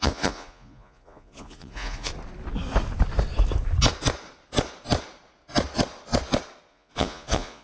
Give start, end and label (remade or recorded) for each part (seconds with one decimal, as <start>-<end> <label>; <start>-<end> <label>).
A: 0.0-2.1 remade; 2.1-6.7 recorded; 6.7-7.6 remade

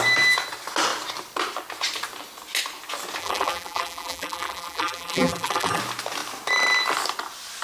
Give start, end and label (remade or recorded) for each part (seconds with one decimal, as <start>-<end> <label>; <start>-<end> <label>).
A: 0.0-3.2 recorded; 3.2-5.8 remade; 5.8-7.6 recorded

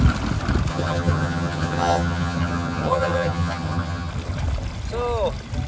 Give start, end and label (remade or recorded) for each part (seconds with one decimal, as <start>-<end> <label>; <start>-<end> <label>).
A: 0.0-0.7 recorded; 0.7-4.1 remade; 4.1-5.7 recorded